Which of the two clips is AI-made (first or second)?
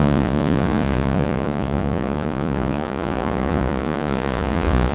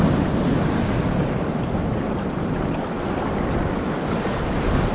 first